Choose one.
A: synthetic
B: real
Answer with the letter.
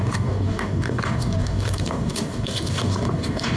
A